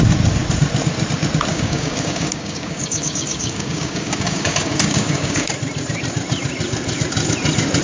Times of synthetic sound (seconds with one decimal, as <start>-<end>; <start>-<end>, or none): 1.5-5.5